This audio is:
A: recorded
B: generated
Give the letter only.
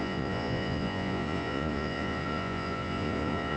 B